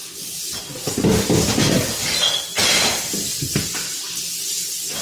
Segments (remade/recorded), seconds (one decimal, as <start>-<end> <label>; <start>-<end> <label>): 0.0-2.2 remade; 2.2-2.6 recorded; 2.6-4.2 remade; 4.2-5.0 recorded